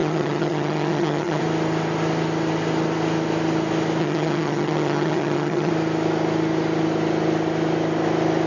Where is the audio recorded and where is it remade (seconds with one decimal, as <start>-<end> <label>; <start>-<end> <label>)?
0.0-1.4 remade; 1.4-4.0 recorded; 4.0-5.7 remade; 5.7-8.5 recorded

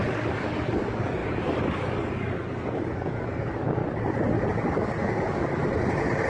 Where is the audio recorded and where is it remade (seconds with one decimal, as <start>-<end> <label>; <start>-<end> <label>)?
0.0-3.8 remade; 3.8-4.7 recorded; 4.7-5.6 remade; 5.6-6.3 recorded

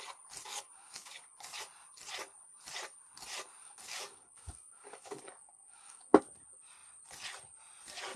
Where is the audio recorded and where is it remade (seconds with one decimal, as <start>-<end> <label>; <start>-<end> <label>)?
0.0-0.5 recorded; 0.5-1.5 remade; 1.5-3.6 recorded; 3.6-6.2 remade; 6.2-8.2 recorded

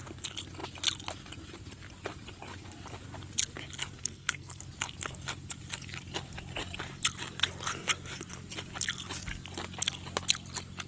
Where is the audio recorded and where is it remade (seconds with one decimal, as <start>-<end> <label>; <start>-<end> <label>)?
0.0-4.0 recorded; 4.0-4.6 remade; 4.6-10.9 recorded

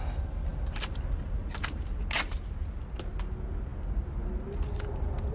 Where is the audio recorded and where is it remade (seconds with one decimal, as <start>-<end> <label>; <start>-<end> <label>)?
0.0-5.3 recorded